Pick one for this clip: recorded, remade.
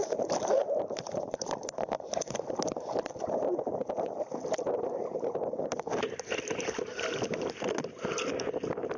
recorded